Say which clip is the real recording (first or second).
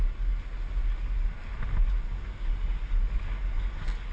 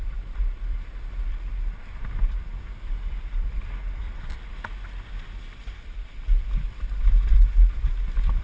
first